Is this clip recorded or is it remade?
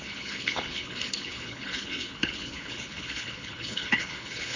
remade